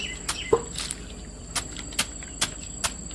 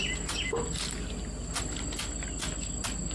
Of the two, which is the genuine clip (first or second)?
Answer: second